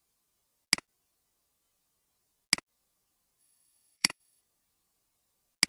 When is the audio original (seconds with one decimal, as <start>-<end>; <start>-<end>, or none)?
0.0-3.4; 4.4-5.7